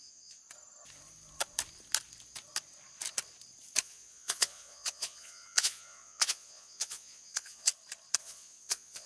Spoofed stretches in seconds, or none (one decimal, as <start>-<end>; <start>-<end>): 0.0-0.4; 3.8-7.7; 8.2-9.1